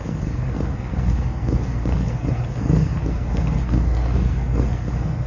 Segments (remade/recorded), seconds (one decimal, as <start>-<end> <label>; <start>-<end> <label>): 0.0-5.3 remade